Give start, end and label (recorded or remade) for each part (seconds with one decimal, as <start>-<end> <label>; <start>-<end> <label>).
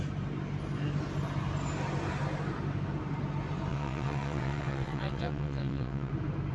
0.0-3.7 recorded; 3.7-6.1 remade; 6.1-6.5 recorded